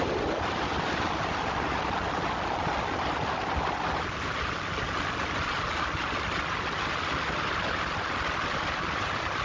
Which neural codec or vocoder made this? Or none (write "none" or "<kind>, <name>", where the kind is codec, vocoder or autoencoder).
none